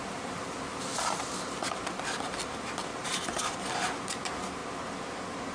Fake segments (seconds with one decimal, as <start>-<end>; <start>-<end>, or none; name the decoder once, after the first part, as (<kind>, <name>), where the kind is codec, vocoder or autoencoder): none